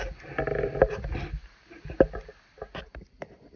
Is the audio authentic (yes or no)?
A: yes